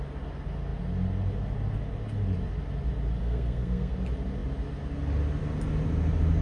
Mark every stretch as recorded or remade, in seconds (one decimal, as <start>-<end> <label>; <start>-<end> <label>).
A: 0.0-3.2 recorded; 3.2-3.9 remade; 3.9-6.4 recorded